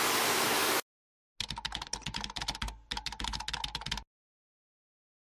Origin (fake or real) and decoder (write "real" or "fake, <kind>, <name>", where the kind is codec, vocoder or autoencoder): real